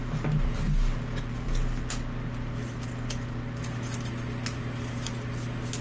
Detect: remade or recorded recorded